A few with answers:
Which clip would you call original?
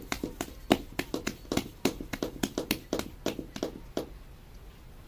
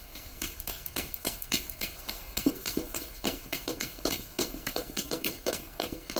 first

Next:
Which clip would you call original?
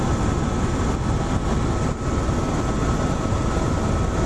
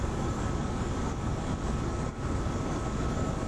first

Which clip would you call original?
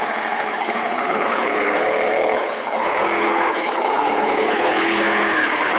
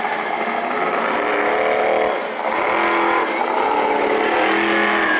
second